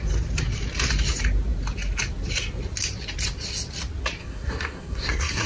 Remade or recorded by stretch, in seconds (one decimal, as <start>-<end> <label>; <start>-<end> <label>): 0.0-4.2 recorded; 4.2-5.5 remade